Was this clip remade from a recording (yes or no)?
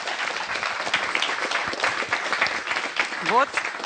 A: no